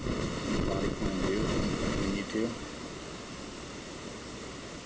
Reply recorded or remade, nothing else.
recorded